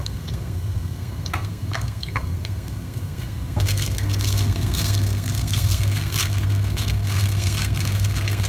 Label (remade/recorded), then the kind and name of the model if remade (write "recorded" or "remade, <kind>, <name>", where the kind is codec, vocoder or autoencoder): remade, codec, SNAC